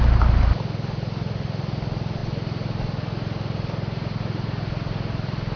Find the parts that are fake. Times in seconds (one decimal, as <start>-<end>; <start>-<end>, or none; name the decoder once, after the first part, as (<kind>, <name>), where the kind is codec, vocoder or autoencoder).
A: none